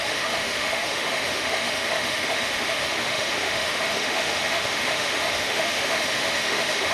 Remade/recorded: remade